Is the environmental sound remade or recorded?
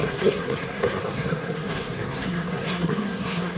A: remade